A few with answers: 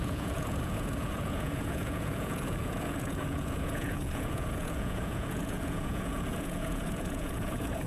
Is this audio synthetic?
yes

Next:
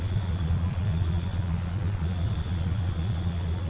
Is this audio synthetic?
yes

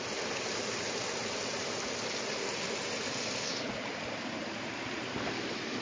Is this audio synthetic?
no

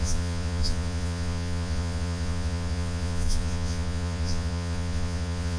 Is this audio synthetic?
yes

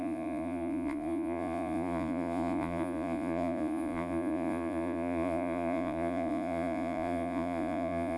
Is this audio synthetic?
yes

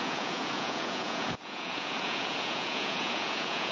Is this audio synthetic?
yes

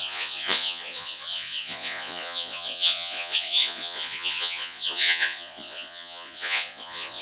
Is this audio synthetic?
yes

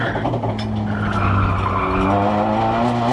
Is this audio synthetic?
no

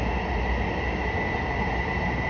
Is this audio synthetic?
no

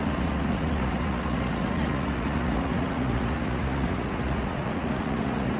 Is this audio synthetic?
yes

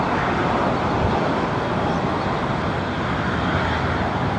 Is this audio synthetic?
no